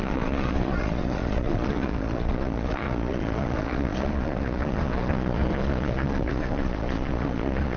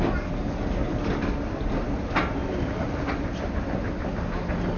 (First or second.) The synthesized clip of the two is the first